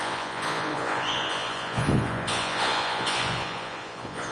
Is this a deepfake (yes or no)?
yes